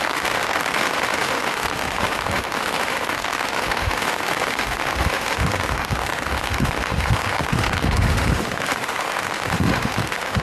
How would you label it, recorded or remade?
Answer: remade